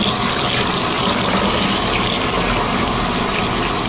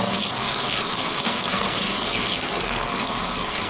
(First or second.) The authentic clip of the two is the first